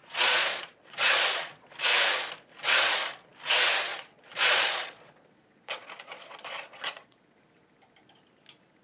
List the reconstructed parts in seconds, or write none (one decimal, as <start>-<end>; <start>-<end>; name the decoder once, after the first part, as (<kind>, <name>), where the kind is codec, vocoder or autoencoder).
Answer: 0.0-1.7 (vocoder, Vocos); 3.9-7.4